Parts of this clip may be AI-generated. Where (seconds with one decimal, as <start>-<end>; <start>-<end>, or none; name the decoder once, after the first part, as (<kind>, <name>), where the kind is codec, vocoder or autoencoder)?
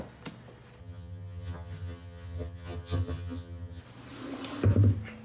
0.8-3.8 (vocoder, HiFi-GAN)